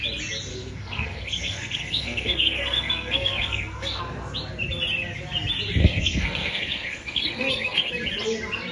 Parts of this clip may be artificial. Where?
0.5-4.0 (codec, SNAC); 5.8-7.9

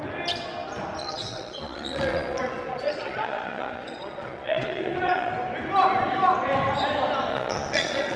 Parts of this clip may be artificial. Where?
1.0-5.3 (vocoder, Vocos); 7.3-8.2